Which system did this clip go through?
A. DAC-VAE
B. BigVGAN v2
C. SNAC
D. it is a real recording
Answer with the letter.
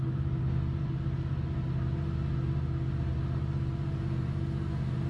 D